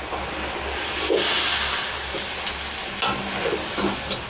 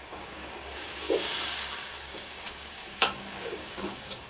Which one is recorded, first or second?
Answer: first